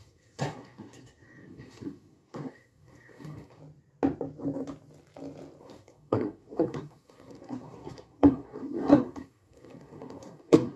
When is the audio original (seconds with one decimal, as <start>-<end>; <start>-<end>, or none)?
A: 3.6-5.6

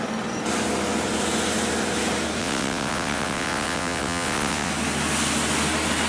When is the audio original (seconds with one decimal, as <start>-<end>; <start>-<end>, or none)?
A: 0.0-2.4; 4.7-6.1

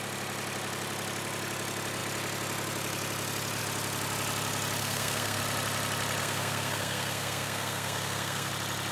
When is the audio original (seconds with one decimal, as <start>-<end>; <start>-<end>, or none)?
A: 0.0-4.8; 5.4-6.2; 8.5-8.9

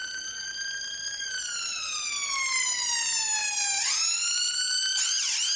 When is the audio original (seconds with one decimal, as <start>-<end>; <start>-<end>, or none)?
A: 0.0-5.6

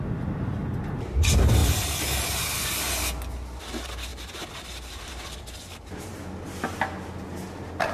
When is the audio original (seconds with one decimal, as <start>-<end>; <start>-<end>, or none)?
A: 0.0-1.6; 2.9-4.1; 6.1-7.9

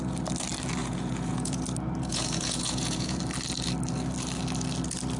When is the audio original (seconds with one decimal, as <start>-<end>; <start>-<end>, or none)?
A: 0.0-0.8; 1.6-2.1; 3.2-5.2

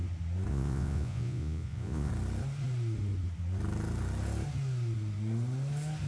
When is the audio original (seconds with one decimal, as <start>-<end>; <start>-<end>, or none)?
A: 0.0-0.5; 2.1-6.1